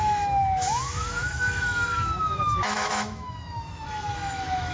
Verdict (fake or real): fake